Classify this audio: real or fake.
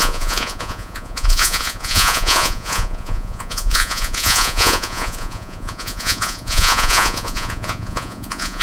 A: fake